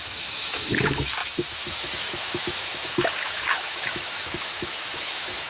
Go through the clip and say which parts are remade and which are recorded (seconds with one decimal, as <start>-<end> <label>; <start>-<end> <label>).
0.0-5.5 remade